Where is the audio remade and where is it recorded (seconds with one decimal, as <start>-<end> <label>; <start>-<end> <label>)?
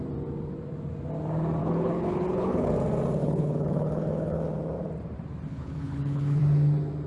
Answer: 0.0-1.6 recorded; 1.6-2.7 remade; 2.7-3.2 recorded; 3.2-4.4 remade; 4.4-5.5 recorded; 5.5-6.4 remade; 6.4-7.1 recorded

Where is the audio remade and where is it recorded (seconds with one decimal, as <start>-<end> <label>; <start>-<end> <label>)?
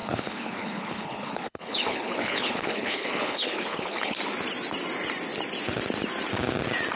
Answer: 0.0-4.2 remade; 4.2-7.0 recorded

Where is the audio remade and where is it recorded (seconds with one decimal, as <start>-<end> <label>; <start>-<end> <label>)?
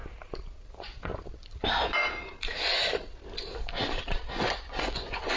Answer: 0.0-0.7 recorded; 0.7-1.1 remade; 1.1-4.3 recorded; 4.3-5.4 remade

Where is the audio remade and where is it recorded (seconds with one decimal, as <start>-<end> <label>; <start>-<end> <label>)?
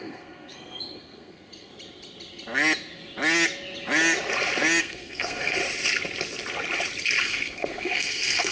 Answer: 0.0-1.7 remade; 1.7-4.8 recorded; 4.8-5.6 remade; 5.6-7.2 recorded; 7.2-8.5 remade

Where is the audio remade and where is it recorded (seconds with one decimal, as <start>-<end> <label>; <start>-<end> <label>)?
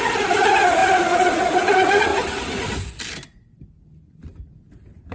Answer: 0.0-2.1 remade; 2.1-4.5 recorded; 4.5-5.1 remade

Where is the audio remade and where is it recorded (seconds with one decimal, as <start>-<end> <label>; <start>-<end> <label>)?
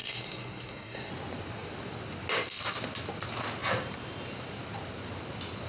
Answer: 0.0-1.1 remade; 1.1-5.7 recorded